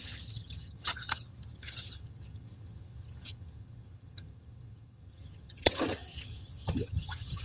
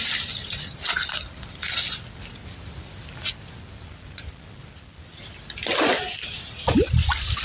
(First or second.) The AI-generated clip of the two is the first